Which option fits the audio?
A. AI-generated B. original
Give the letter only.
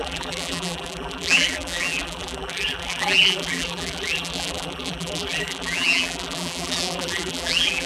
A